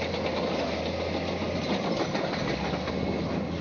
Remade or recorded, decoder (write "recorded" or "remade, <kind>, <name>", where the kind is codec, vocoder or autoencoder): recorded